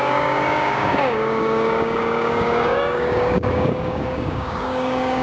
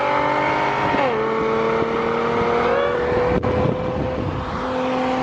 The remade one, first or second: first